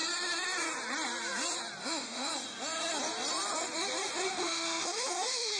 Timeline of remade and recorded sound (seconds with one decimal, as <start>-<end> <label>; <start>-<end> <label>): 0.0-1.8 recorded; 1.8-2.3 remade; 2.3-4.3 recorded; 4.3-5.6 remade